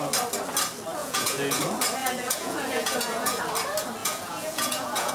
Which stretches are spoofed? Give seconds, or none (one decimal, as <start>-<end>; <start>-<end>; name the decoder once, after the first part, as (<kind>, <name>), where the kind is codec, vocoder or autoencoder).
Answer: 1.0-1.6 (vocoder, Vocos); 2.0-3.4; 4.0-5.1